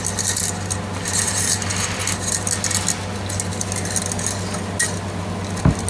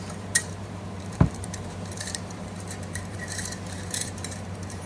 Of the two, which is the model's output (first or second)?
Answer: second